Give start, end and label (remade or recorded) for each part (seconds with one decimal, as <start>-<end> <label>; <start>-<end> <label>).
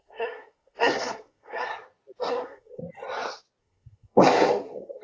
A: 0.0-1.7 remade; 1.7-2.3 recorded; 2.3-2.8 remade; 2.8-3.6 recorded; 3.6-5.0 remade